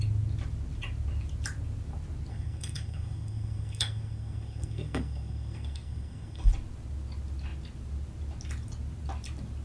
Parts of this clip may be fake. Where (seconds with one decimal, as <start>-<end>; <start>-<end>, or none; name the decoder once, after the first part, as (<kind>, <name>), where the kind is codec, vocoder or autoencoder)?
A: 2.3-6.5 (codec, SNAC)